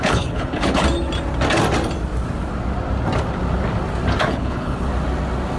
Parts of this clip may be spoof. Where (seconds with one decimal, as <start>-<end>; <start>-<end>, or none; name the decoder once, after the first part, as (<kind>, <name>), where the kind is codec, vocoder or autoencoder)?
0.0-0.8 (codec, HILCodec); 4.2-4.9